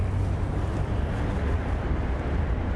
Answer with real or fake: real